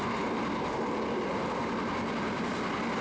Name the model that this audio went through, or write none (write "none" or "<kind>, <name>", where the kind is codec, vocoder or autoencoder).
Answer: none